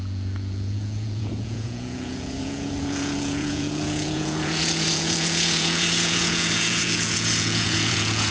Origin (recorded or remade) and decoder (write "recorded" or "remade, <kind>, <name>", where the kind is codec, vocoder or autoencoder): remade, vocoder, Vocos